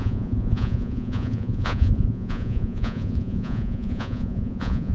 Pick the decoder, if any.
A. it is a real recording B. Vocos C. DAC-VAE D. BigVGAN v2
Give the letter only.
B